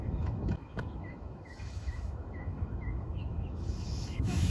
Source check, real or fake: fake